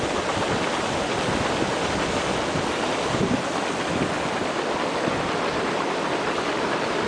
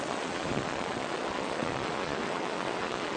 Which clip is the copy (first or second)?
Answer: second